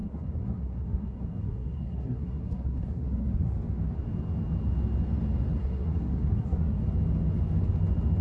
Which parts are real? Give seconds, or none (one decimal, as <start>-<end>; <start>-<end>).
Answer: 3.5-5.6; 6.8-8.2